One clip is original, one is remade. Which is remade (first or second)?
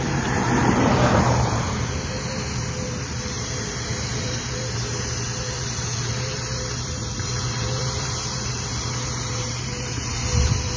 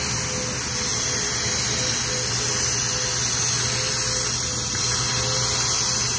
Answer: first